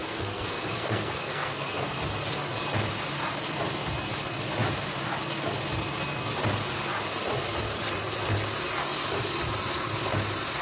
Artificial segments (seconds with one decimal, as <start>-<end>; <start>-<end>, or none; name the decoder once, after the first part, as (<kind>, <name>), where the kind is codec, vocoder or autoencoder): 0.0-2.0 (codec, SNAC)